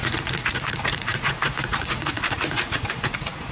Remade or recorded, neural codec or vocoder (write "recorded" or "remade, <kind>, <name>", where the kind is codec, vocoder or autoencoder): remade, vocoder, Vocos